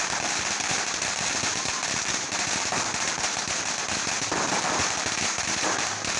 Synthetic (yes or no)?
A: yes